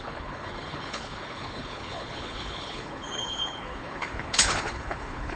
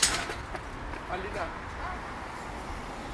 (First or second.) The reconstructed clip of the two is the first